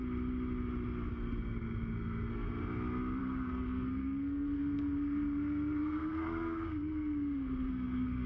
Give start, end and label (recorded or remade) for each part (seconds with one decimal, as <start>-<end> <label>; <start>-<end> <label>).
0.0-1.1 recorded; 1.1-2.5 remade; 2.5-3.2 recorded; 3.2-8.3 remade